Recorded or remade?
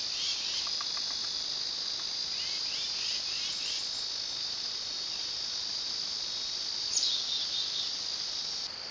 recorded